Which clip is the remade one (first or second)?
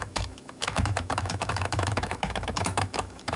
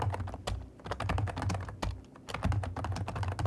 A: first